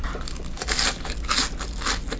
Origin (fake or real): real